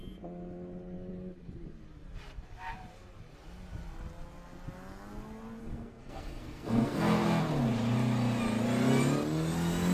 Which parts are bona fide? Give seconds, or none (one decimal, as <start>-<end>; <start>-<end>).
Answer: 0.0-5.6; 7.4-9.9